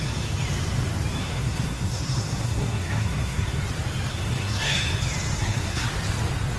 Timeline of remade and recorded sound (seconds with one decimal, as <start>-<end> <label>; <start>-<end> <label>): 0.0-1.2 recorded; 1.2-3.6 remade; 3.6-4.1 recorded; 4.1-4.8 remade; 4.8-5.4 recorded; 5.4-5.9 remade; 5.9-6.6 recorded

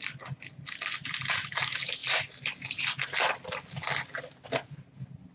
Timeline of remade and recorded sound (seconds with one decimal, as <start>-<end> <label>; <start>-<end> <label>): 0.0-5.3 recorded

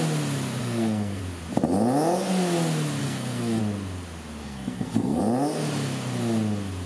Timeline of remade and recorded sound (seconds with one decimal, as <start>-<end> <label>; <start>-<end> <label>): 0.0-0.6 recorded; 0.6-1.2 remade; 1.2-3.0 recorded; 3.0-3.6 remade; 3.6-4.4 recorded; 4.4-5.2 remade; 5.2-6.9 recorded

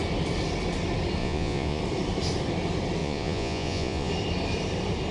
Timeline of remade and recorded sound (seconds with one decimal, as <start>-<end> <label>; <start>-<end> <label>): 0.0-1.2 recorded; 1.2-1.8 remade; 1.8-3.0 recorded; 3.0-4.1 remade; 4.1-5.1 recorded